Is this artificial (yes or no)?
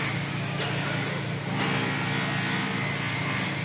no